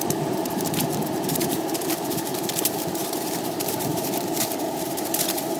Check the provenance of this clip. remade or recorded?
remade